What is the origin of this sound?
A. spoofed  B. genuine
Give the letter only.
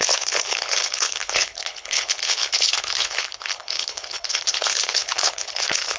A